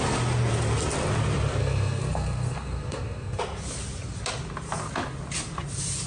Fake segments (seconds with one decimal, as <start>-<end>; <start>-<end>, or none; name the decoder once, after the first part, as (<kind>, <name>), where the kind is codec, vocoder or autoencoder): 1.6-3.4 (codec, SNAC)